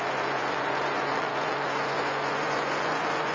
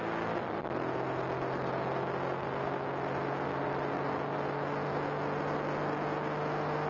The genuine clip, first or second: second